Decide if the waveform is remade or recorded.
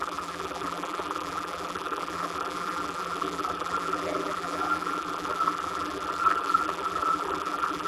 remade